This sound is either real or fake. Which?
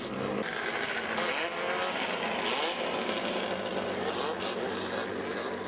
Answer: real